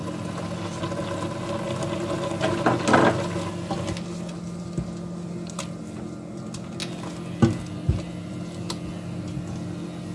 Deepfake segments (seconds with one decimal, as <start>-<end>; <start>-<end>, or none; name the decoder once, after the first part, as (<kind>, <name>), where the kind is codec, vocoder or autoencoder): none